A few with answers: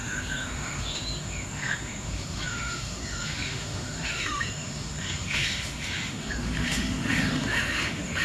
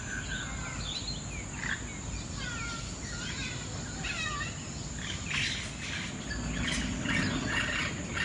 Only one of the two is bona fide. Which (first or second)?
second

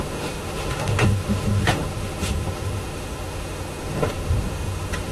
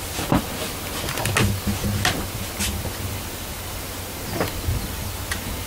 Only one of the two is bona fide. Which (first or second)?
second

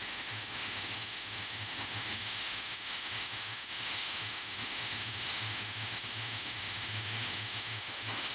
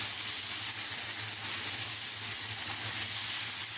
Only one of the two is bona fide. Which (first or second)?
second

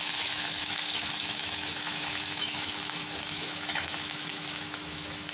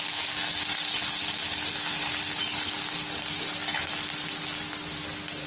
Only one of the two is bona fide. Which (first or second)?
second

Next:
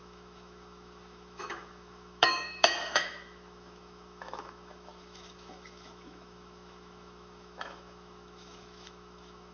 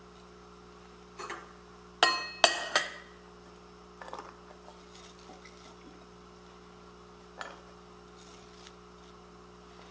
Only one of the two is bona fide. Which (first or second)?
second